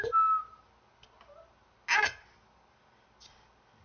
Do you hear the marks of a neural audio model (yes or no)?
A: no